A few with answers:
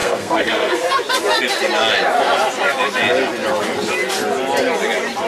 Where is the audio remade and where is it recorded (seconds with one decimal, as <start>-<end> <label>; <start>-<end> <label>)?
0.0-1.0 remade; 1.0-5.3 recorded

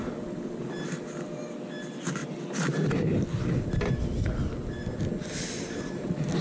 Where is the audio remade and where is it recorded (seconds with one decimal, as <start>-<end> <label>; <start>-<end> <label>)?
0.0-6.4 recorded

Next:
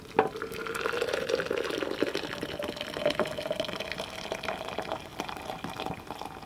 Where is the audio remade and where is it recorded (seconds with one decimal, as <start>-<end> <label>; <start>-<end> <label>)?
0.0-6.5 recorded

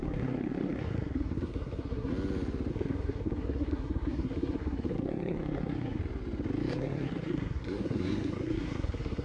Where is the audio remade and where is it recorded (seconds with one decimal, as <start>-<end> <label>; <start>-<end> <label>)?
0.0-2.1 remade; 2.1-2.7 recorded; 2.7-6.0 remade; 6.0-6.7 recorded; 6.7-9.2 remade

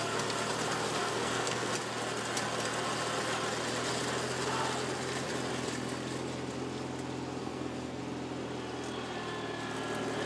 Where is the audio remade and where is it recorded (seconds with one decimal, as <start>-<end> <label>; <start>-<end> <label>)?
0.0-1.0 recorded; 1.0-1.7 remade; 1.7-7.4 recorded; 7.4-8.0 remade; 8.0-10.3 recorded

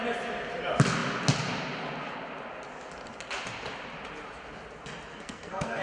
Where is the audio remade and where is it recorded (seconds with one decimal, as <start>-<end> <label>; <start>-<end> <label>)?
0.0-5.1 recorded; 5.1-5.8 remade